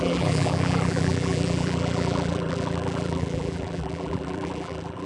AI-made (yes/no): yes